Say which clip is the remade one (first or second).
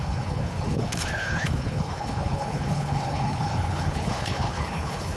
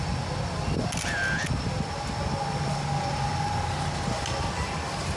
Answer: first